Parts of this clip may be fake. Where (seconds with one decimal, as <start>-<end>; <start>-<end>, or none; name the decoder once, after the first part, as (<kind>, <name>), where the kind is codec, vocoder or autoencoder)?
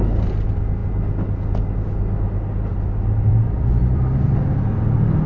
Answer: 2.7-5.3 (vocoder, BigVGAN v2)